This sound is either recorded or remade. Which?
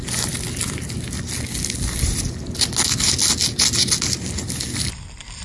recorded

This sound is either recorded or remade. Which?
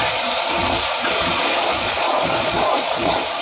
remade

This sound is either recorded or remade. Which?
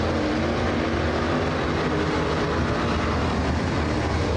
recorded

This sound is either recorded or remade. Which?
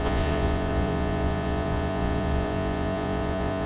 remade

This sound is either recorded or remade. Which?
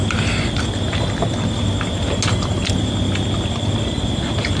recorded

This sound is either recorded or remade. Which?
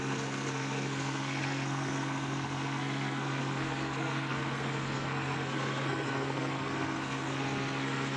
remade